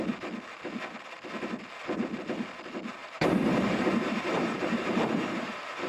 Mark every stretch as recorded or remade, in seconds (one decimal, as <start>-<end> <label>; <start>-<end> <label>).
0.0-3.0 recorded; 3.0-5.9 remade